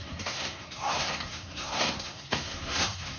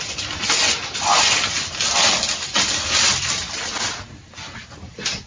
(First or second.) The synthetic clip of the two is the first